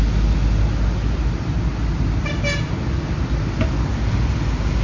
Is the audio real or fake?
real